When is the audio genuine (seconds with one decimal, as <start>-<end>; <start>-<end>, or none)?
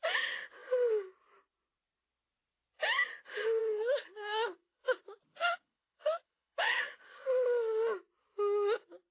0.0-3.6; 6.8-9.1